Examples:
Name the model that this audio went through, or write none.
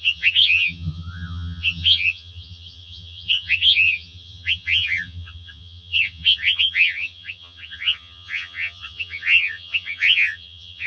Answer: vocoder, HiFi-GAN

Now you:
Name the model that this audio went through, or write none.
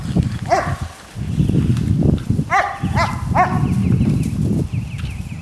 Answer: none